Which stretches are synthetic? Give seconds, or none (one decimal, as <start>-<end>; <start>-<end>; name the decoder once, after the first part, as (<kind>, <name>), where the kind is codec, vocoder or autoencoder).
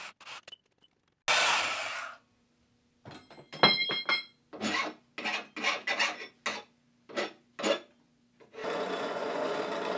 8.6-9.6 (vocoder, Vocos)